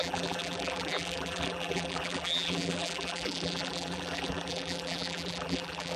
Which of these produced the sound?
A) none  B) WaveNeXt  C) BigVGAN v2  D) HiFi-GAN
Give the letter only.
C